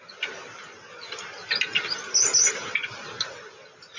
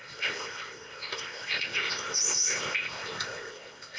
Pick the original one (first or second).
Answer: first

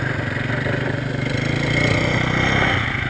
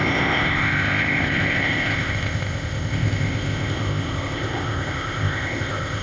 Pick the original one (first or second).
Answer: first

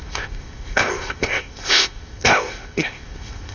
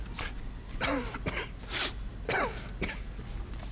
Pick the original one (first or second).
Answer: second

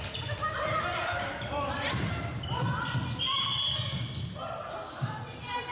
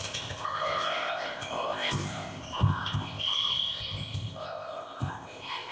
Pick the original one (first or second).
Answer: first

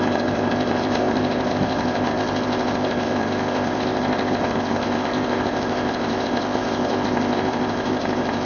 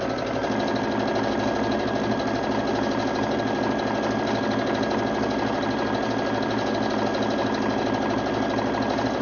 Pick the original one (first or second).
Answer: second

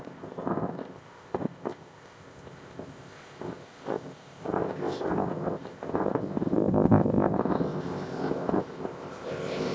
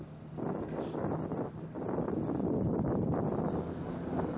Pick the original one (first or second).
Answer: second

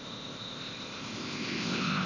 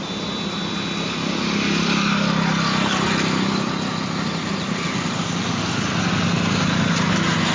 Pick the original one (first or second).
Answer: second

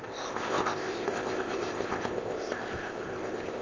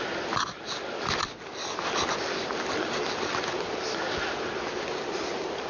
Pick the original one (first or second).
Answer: second